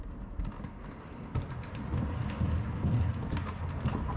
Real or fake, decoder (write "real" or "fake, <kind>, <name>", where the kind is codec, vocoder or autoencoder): real